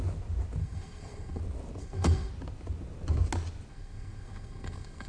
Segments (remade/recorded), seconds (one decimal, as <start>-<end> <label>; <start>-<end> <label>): 0.0-0.6 recorded; 0.6-1.4 remade; 1.4-1.8 recorded; 1.8-2.3 remade; 2.3-3.7 recorded; 3.7-5.1 remade

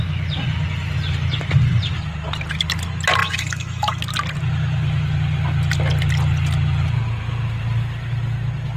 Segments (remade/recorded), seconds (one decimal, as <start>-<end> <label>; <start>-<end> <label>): 0.0-3.2 recorded; 3.2-4.0 remade; 4.0-8.8 recorded

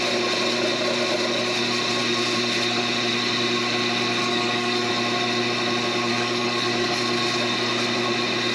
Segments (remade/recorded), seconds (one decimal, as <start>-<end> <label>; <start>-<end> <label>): 0.0-4.2 recorded; 4.2-4.9 remade; 4.9-6.1 recorded; 6.1-7.0 remade; 7.0-8.5 recorded

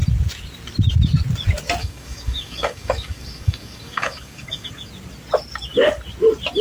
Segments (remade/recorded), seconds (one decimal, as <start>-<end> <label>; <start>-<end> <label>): 0.0-1.8 recorded; 1.8-4.7 remade; 4.7-6.6 recorded